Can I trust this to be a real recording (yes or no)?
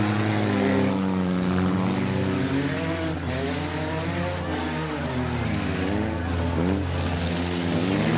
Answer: yes